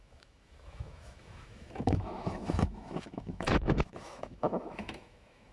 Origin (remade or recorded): remade